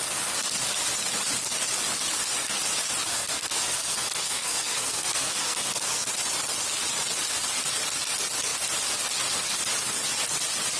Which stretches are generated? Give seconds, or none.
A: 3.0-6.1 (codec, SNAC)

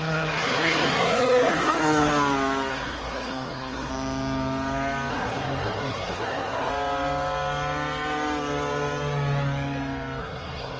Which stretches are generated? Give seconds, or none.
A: 0.0-2.1 (codec, SNAC); 2.7-3.9; 5.1-6.7; 10.2-10.8

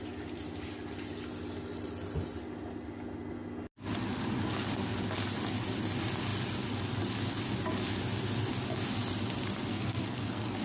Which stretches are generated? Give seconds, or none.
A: 9.7-10.6 (codec, SNAC)

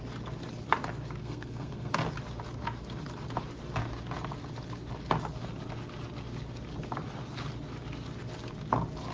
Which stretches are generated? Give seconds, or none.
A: 1.2-1.9 (codec, SNAC)